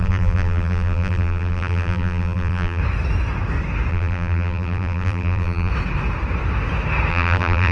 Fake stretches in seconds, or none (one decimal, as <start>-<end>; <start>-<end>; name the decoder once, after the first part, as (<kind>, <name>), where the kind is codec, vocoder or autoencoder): 0.0-2.8 (vocoder, BigVGAN v2); 3.9-5.7; 7.1-7.7